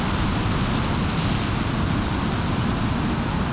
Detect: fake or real real